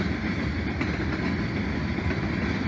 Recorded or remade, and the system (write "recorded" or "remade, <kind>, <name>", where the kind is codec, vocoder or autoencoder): recorded